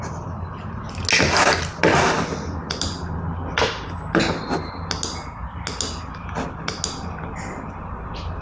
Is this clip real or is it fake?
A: real